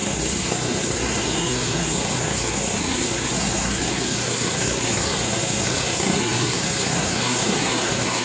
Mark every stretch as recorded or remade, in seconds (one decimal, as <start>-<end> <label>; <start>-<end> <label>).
0.0-8.2 remade

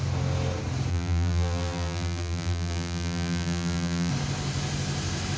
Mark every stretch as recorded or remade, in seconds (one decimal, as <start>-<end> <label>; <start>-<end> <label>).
0.0-0.9 recorded; 0.9-4.1 remade; 4.1-5.4 recorded

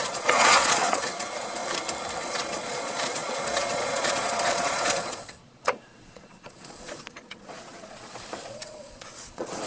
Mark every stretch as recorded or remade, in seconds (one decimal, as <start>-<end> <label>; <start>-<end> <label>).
0.0-1.6 remade; 1.6-2.2 recorded; 2.2-9.7 remade

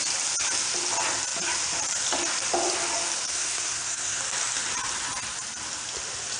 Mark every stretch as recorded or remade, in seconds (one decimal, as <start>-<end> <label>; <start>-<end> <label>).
0.0-3.3 recorded; 3.3-4.2 remade; 4.2-6.4 recorded

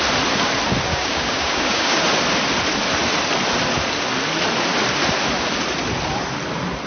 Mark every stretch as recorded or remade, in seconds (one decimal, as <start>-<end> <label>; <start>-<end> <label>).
0.0-0.9 recorded; 0.9-2.0 remade; 2.0-6.9 recorded

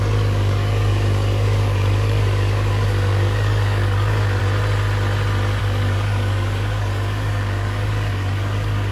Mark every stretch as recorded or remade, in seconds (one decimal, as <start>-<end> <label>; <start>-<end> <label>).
0.0-4.4 remade; 4.4-5.6 recorded; 5.6-8.9 remade

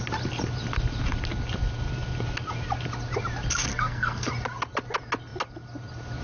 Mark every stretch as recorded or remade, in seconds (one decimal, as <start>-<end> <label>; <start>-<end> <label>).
0.0-3.7 recorded; 3.7-4.3 remade; 4.3-6.2 recorded